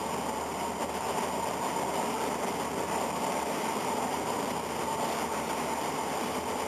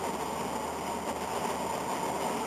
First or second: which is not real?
first